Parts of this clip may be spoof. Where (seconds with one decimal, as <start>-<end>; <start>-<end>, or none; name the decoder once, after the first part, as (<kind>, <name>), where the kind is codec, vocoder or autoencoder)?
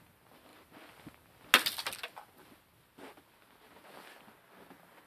none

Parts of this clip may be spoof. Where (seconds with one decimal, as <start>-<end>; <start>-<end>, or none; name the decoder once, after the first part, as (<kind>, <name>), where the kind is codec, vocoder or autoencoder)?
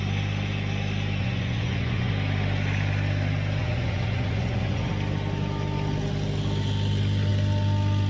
1.2-2.1 (vocoder, Vocos); 3.6-4.9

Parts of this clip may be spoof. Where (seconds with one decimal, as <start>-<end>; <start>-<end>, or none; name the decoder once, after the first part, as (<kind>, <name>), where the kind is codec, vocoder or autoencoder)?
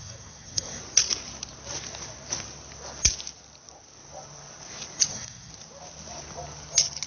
0.0-0.8 (codec, SNAC); 5.1-5.5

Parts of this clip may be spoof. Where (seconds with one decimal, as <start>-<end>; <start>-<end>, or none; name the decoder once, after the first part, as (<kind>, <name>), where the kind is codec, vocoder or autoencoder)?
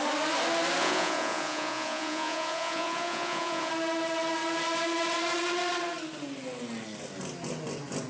0.8-3.7 (vocoder, Vocos)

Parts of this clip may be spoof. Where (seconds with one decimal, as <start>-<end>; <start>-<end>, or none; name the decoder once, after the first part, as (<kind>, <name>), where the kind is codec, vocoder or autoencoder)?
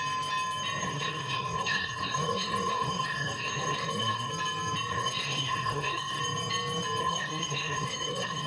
0.8-4.3 (codec, SNAC); 4.9-6.2; 7.0-8.5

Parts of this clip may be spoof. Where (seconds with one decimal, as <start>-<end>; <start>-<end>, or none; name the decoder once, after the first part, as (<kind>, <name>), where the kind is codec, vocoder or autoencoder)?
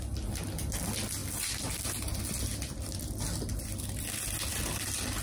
none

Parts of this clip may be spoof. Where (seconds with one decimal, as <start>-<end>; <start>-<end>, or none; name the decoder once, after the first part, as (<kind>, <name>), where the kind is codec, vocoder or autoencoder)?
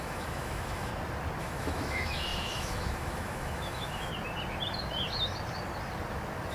0.0-0.9 (autoencoder, DAC-VAE); 1.4-4.1